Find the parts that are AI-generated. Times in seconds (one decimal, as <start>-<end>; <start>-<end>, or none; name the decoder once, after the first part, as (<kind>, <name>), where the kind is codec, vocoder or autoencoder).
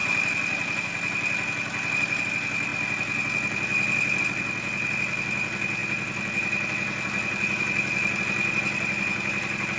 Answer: none